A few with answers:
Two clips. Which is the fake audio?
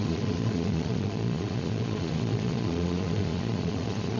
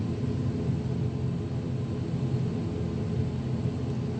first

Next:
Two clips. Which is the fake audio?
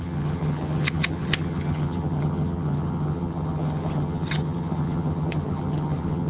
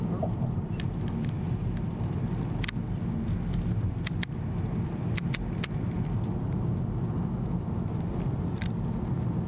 first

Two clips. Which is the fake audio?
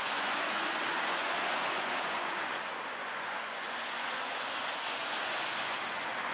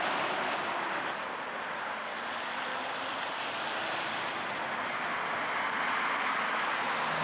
first